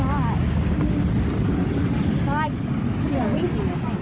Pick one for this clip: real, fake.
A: real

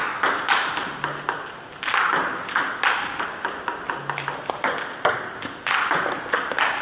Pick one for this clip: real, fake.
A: real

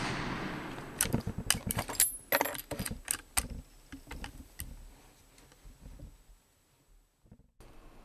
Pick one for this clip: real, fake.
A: real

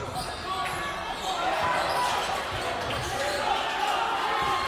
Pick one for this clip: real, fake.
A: real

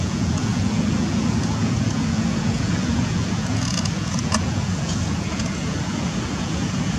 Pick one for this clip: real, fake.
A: fake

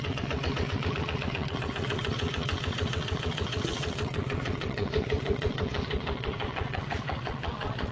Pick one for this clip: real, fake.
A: fake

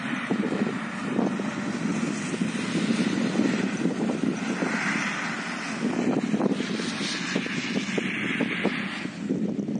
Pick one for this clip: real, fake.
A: real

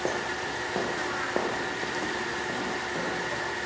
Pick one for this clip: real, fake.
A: real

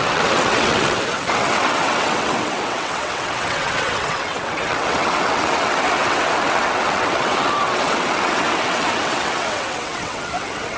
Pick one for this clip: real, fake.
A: fake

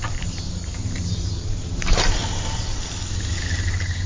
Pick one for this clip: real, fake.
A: fake